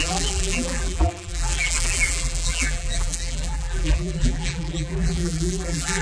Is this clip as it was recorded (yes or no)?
no